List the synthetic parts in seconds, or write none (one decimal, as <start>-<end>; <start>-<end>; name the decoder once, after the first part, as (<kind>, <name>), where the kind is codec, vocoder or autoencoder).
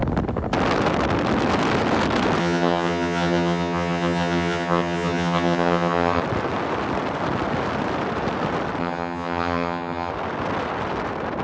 2.4-6.2 (vocoder, HiFi-GAN); 8.8-10.1